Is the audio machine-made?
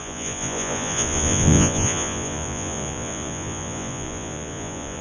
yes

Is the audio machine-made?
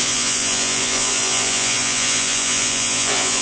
yes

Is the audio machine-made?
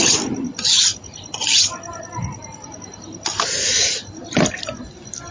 no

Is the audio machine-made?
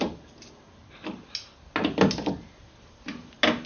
no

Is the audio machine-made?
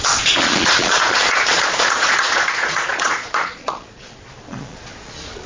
yes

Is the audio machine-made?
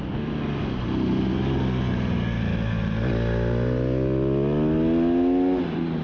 no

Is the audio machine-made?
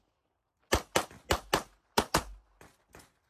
no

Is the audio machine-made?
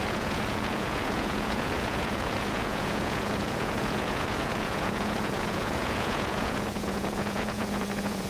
yes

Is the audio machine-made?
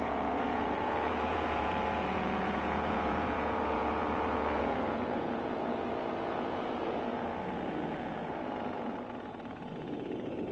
yes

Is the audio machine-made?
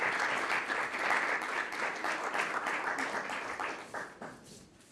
no